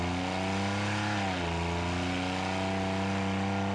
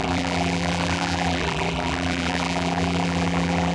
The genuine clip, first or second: first